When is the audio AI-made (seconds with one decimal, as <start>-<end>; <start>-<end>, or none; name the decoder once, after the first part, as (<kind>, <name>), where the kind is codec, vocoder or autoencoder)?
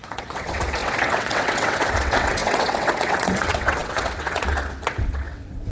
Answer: 0.0-5.7 (vocoder, WaveNeXt)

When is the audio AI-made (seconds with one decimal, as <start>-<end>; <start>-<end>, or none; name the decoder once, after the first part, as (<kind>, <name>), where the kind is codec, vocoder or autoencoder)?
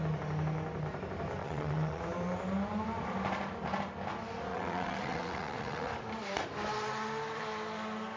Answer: 1.4-2.0 (vocoder, WaveNeXt); 4.5-5.9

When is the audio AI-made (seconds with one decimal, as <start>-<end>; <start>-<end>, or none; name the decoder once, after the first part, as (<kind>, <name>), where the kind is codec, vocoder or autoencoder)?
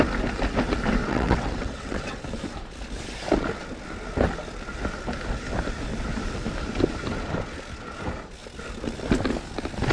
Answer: 1.0-2.2 (vocoder, WaveNeXt)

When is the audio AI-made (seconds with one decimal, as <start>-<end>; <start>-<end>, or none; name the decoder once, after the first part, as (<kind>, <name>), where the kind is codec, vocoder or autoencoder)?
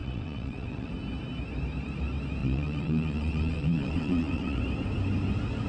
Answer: 0.0-0.9 (vocoder, WaveNeXt); 2.4-4.6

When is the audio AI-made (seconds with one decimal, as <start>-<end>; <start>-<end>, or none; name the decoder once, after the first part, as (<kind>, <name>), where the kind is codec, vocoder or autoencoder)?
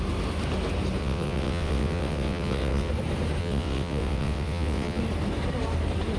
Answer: 1.0-2.9 (vocoder, WaveNeXt); 3.4-5.0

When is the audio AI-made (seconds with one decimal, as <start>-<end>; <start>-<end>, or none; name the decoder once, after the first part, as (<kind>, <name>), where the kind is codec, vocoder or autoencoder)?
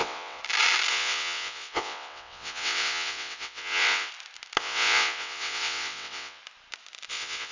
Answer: 0.0-0.4 (vocoder, WaveNeXt); 0.9-4.1; 4.6-6.4; 7.1-7.5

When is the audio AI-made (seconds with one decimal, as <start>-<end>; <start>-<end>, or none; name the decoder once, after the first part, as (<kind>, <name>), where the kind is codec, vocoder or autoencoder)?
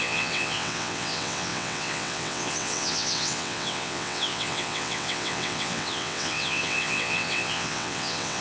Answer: 0.0-8.4 (vocoder, WaveNeXt)